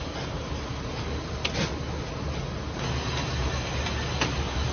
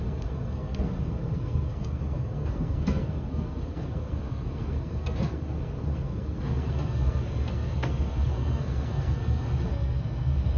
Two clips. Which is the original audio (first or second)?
first